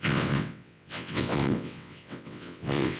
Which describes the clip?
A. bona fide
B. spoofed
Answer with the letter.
B